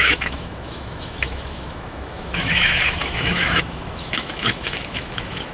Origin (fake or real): fake